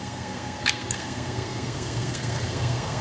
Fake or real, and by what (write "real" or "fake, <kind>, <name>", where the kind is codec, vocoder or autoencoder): fake, codec, SNAC